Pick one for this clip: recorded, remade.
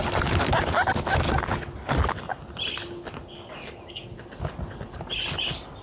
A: recorded